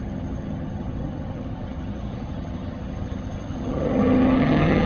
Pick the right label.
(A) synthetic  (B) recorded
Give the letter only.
A